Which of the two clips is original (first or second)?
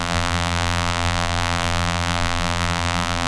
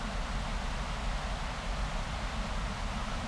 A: second